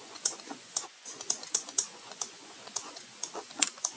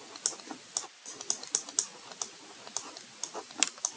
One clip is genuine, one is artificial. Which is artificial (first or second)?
first